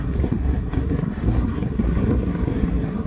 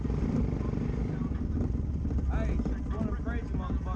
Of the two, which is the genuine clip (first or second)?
second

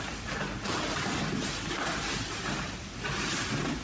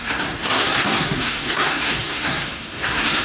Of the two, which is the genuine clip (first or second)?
first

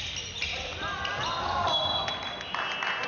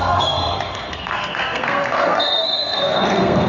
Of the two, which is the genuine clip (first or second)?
first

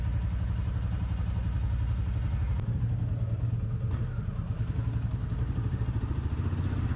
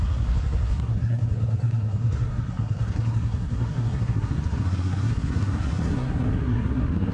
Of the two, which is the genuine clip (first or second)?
first